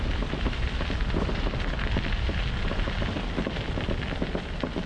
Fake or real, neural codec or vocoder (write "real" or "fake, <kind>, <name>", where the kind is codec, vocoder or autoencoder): real